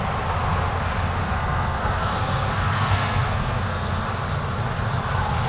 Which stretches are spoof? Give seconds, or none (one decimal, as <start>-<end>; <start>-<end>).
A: 1.2-3.9